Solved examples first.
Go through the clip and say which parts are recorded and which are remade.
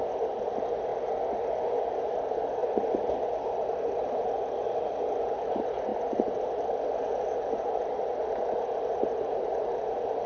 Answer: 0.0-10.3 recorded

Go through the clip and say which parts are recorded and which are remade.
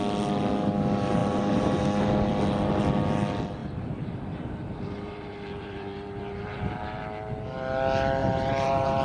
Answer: 0.0-3.6 recorded; 3.6-7.0 remade; 7.0-8.2 recorded; 8.2-9.0 remade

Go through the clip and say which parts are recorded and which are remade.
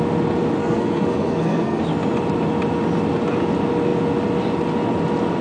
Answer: 0.0-0.6 recorded; 0.6-1.8 remade; 1.8-5.4 recorded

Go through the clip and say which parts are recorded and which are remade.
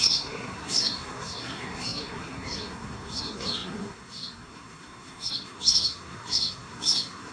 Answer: 0.0-7.3 remade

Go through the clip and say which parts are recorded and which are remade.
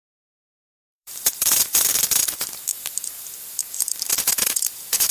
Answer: 0.0-2.2 remade; 2.2-2.7 recorded; 2.7-4.1 remade; 4.1-5.1 recorded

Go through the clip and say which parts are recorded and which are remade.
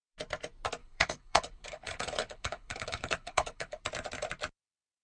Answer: 0.0-0.8 recorded; 0.8-3.8 remade; 3.8-5.0 recorded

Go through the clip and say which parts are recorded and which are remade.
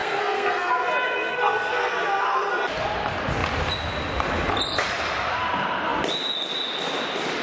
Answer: 0.0-0.7 remade; 0.7-1.3 recorded; 1.3-1.9 remade; 1.9-7.4 recorded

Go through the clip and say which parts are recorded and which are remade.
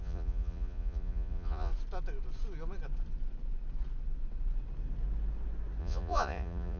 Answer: 0.0-1.7 remade; 1.7-5.8 recorded; 5.8-6.8 remade